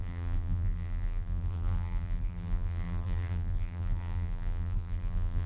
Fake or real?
fake